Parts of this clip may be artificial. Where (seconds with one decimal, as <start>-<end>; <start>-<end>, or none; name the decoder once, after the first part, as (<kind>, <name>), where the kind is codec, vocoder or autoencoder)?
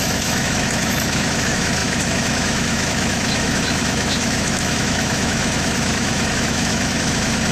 0.0-7.5 (autoencoder, DAC-VAE)